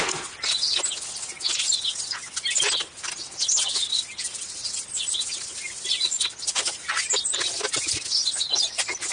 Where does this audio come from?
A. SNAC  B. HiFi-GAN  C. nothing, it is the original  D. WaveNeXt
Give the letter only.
C